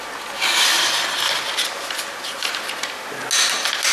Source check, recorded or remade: recorded